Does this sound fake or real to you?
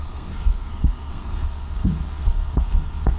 fake